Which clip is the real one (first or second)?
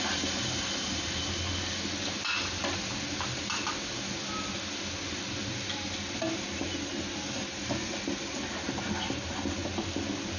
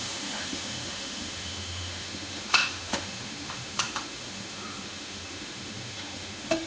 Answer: first